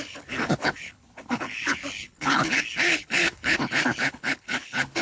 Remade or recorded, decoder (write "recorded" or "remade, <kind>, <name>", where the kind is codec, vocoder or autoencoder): remade, codec, HILCodec